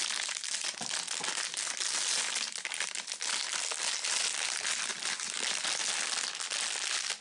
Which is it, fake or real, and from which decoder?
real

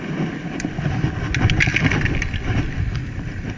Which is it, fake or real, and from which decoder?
real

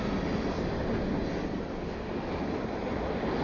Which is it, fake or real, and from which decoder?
real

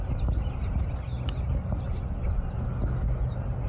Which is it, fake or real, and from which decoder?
real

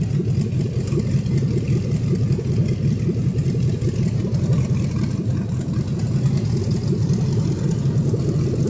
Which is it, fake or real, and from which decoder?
real